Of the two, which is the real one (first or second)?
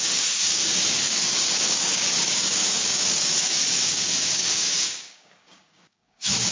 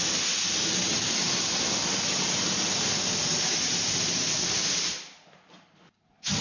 second